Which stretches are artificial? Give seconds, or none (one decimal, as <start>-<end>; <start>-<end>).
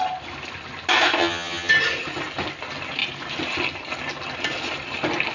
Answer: 1.2-1.7